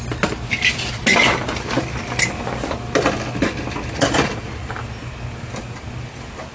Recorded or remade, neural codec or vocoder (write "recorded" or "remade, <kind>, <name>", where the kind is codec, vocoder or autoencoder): recorded